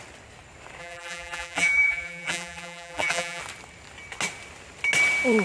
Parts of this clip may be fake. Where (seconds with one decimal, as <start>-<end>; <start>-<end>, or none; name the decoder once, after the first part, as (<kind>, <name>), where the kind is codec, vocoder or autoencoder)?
0.8-3.4 (vocoder, BigVGAN v2)